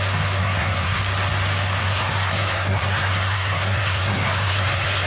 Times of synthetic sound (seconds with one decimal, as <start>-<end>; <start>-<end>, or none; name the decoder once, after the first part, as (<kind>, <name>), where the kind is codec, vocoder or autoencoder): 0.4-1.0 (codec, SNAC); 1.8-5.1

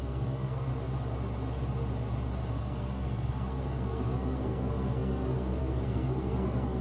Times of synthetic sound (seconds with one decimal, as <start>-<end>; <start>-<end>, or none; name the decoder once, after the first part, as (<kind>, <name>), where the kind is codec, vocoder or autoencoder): 0.0-0.7 (codec, SNAC); 2.6-6.8

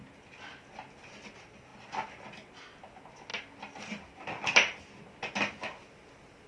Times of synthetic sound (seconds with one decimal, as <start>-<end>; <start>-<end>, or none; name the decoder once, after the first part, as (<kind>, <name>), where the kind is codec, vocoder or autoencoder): none

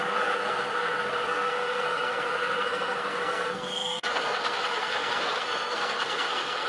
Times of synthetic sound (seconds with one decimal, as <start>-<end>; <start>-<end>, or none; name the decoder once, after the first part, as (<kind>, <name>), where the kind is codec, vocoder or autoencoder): 0.0-6.7 (codec, SNAC)